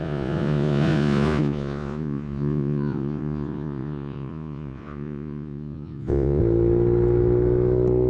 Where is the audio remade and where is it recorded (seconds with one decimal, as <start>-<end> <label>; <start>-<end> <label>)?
0.0-6.4 remade; 6.4-8.1 recorded